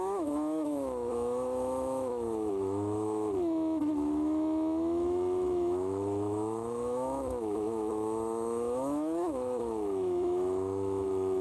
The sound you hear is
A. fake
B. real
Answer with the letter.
A